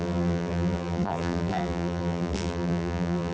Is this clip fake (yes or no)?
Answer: yes